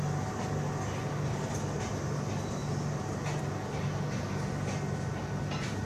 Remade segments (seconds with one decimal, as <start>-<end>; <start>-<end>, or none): none